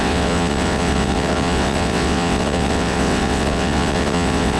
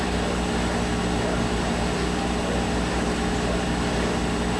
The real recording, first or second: second